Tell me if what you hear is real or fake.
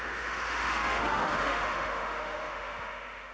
fake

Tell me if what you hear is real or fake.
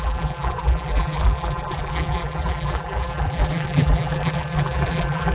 fake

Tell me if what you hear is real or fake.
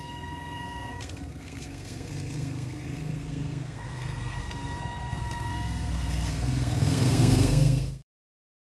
fake